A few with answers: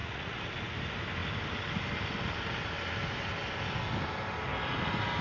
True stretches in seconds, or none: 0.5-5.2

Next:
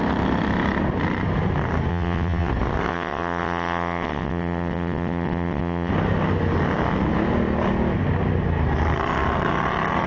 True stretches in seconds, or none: 0.0-1.9; 2.5-2.9; 5.9-10.1

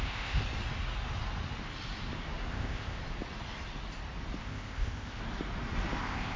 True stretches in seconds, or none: 0.4-2.5; 3.0-4.4; 5.2-6.0

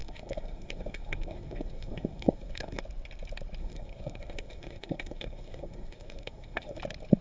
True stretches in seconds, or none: 2.8-3.6; 6.8-7.2